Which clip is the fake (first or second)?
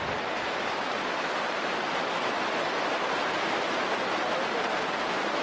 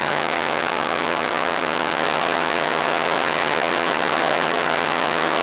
second